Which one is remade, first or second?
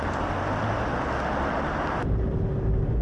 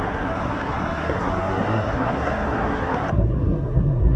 second